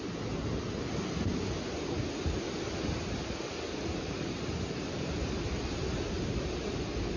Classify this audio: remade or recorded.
recorded